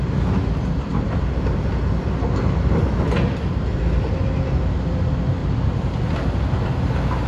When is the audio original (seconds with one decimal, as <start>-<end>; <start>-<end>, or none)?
0.0-5.4; 6.4-7.3